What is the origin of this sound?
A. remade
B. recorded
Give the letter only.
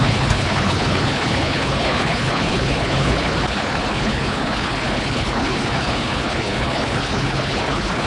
A